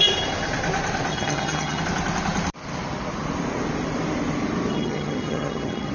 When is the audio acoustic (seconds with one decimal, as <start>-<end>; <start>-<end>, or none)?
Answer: 0.0-1.1; 1.8-4.7